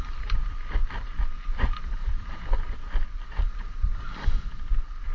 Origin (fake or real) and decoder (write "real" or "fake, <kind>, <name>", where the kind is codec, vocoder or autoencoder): real